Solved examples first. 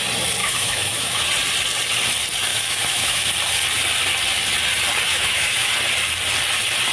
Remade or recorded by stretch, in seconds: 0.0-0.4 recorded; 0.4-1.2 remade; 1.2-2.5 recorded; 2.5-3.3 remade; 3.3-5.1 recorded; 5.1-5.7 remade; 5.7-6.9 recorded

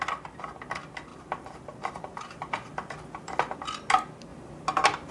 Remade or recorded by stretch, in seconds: 0.0-1.1 recorded; 1.1-3.6 remade; 3.6-5.1 recorded

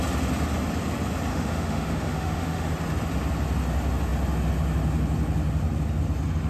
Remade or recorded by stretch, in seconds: 0.0-1.3 recorded; 1.3-2.7 remade; 2.7-6.5 recorded

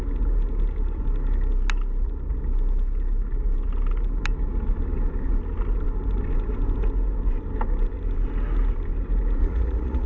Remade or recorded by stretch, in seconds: 0.0-9.4 recorded; 9.4-10.1 remade

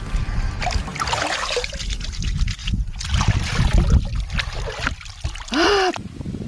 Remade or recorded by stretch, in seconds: 0.0-6.5 recorded